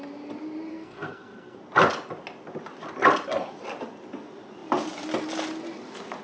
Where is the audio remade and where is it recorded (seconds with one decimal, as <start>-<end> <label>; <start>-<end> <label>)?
0.0-0.7 recorded; 0.7-1.6 remade; 1.6-6.2 recorded